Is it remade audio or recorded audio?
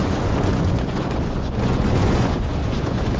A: remade